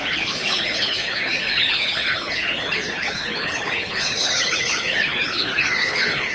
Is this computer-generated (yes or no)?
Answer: yes